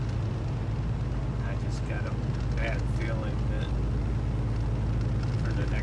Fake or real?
real